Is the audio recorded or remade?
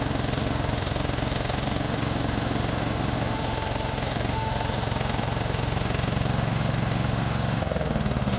remade